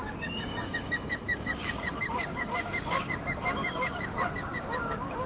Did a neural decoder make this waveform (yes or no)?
yes